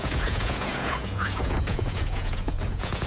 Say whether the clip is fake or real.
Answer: fake